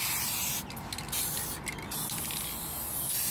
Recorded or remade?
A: recorded